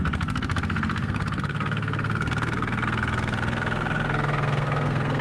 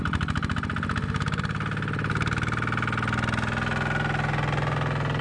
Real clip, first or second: second